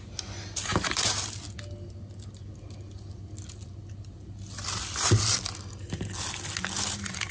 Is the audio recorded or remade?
recorded